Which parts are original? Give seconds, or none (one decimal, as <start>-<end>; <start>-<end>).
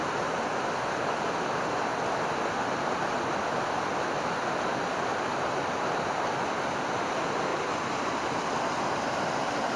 0.0-9.8